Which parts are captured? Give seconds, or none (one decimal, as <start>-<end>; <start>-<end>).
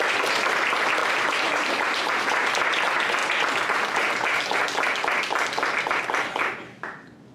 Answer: 0.0-1.0; 2.2-7.3